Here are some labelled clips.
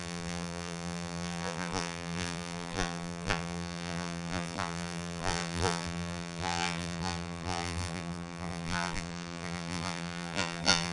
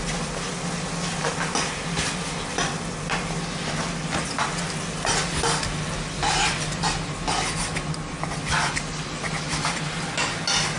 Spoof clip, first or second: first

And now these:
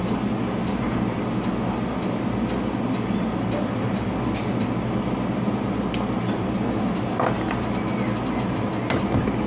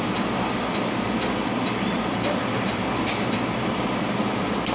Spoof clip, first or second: second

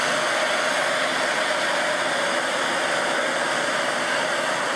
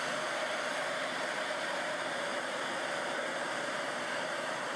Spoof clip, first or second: second